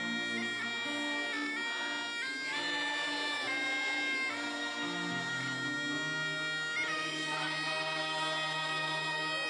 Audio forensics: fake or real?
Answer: real